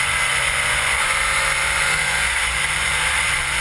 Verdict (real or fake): fake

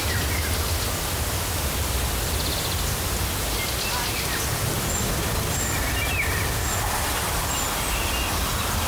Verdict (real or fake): real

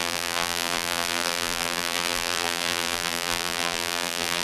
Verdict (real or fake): fake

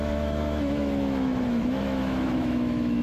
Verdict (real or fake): fake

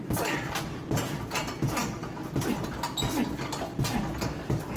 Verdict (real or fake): real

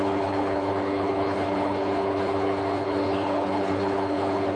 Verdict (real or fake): fake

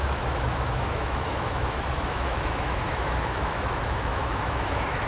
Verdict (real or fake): fake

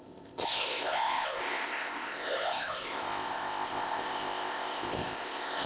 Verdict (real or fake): fake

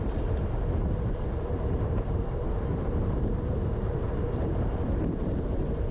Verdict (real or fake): fake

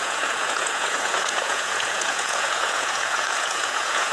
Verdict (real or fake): fake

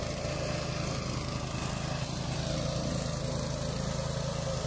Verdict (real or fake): real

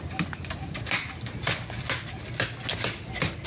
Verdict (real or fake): real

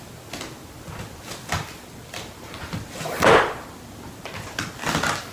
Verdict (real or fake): real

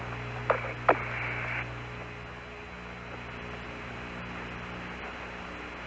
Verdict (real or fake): real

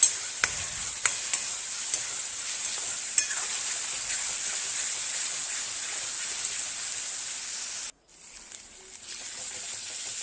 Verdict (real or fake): real